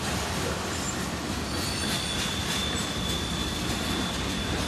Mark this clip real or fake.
real